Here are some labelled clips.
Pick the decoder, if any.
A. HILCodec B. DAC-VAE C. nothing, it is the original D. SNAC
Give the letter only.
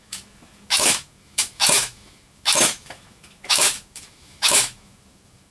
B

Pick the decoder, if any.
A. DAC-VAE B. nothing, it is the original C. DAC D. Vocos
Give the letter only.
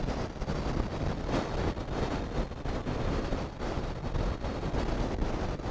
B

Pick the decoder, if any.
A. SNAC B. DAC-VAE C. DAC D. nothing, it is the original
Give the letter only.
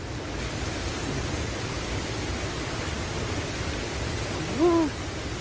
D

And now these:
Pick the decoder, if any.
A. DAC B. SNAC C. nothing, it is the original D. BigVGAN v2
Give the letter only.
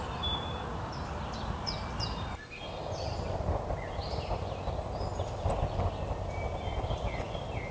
C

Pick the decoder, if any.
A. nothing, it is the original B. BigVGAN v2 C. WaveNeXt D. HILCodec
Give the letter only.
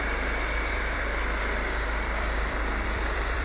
B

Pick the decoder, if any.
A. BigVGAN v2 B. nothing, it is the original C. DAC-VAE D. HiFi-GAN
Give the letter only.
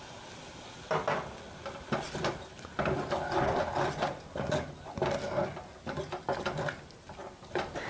B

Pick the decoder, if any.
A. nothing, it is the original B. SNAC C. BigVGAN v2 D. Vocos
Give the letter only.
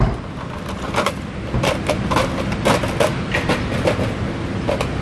A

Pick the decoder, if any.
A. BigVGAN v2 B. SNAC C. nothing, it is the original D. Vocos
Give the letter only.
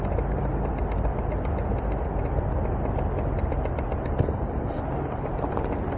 C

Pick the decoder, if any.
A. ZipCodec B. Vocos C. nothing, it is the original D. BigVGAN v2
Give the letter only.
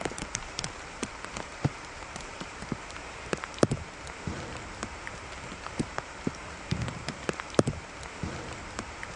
D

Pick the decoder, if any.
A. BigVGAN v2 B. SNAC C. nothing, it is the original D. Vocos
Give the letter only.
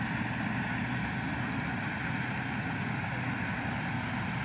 C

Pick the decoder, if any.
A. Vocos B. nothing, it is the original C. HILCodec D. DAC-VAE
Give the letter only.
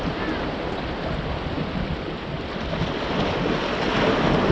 B